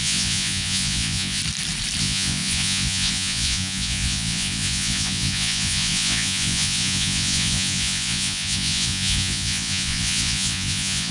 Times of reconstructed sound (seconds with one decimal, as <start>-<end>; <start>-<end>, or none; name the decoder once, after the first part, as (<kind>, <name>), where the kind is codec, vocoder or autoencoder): 0.0-1.4 (vocoder, Vocos); 2.0-11.1